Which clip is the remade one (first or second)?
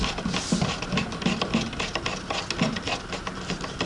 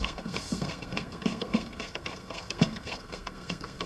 second